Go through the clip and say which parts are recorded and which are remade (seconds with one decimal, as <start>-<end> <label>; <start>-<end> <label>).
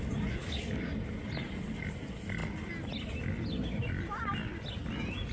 0.0-0.4 recorded; 0.4-0.9 remade; 0.9-5.3 recorded